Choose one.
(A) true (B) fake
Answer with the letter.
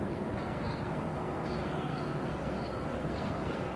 B